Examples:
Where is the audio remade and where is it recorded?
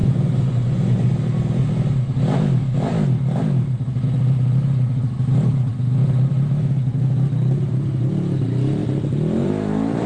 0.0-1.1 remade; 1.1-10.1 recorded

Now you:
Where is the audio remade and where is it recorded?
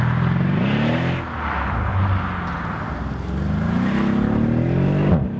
0.0-5.4 recorded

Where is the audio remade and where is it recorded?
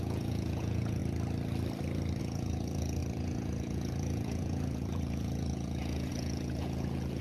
0.0-1.0 remade; 1.0-2.2 recorded; 2.2-7.2 remade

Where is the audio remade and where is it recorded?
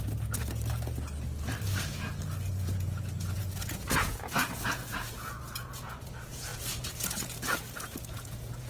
0.0-0.6 remade; 0.6-2.5 recorded; 2.5-8.7 remade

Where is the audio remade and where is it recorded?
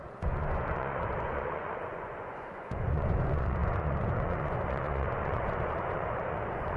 0.0-6.8 remade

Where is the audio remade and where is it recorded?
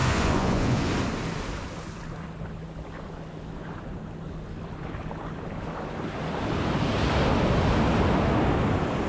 0.0-0.9 remade; 0.9-9.1 recorded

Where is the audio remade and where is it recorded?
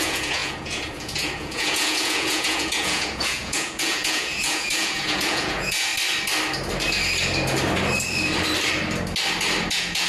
0.0-5.9 remade; 5.9-9.7 recorded; 9.7-10.1 remade